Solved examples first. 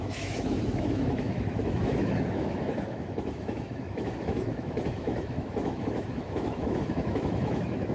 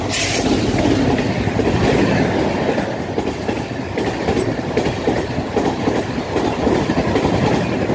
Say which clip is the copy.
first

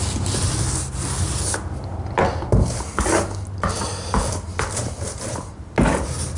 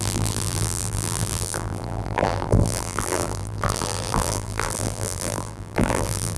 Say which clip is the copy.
second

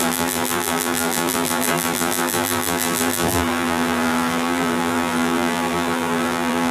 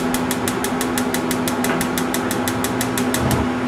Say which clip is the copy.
first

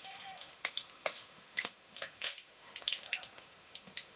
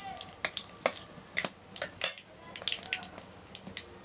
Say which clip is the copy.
first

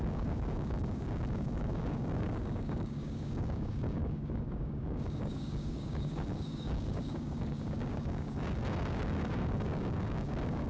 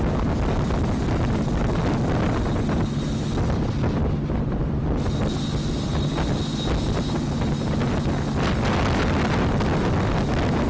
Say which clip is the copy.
first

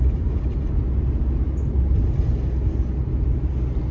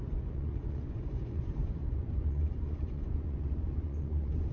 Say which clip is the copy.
second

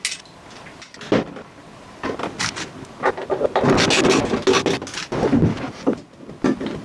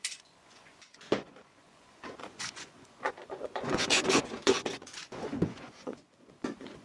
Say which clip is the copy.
second